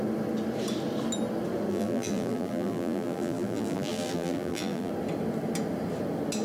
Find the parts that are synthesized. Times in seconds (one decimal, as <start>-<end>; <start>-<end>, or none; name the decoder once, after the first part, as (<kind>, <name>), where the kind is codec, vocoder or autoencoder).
1.7-4.9 (vocoder, BigVGAN v2)